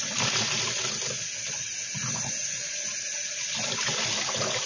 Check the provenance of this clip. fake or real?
real